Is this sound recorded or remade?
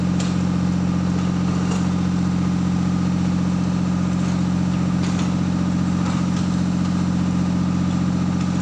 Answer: recorded